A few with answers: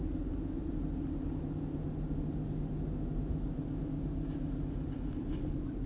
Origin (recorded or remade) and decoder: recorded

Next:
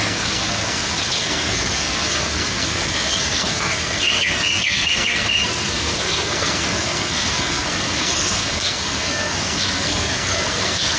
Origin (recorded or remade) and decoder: remade, codec, SNAC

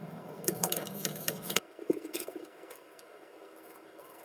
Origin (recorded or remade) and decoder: remade, codec, SNAC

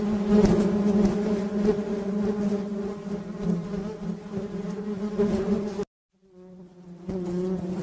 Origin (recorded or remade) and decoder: recorded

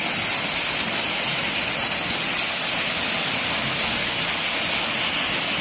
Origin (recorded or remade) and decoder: recorded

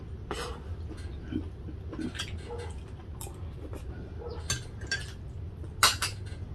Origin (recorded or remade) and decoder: recorded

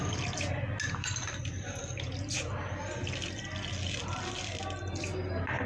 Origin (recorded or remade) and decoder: recorded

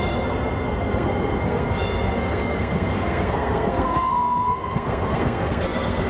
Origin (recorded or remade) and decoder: remade, codec, SNAC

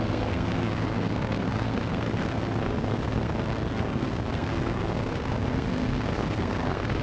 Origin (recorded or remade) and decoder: remade, codec, SNAC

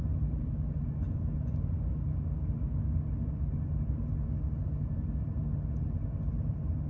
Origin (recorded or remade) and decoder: recorded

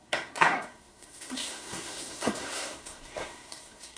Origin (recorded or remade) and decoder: remade, codec, SNAC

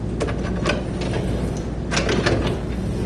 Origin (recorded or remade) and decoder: recorded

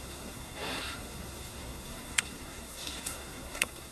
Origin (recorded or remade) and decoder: remade, codec, SNAC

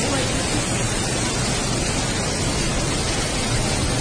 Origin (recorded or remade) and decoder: recorded